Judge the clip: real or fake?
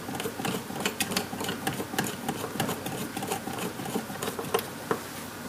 real